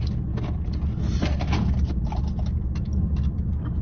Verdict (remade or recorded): recorded